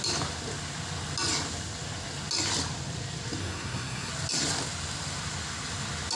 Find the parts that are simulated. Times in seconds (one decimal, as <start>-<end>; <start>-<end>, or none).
3.4-4.1